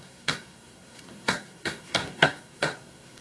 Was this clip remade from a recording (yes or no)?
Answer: yes